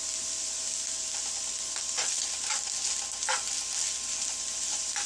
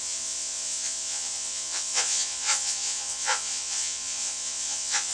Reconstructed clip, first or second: second